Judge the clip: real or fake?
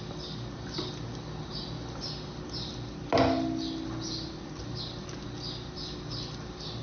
real